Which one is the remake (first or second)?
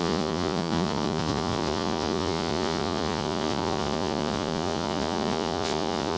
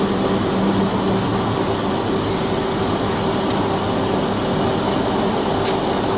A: first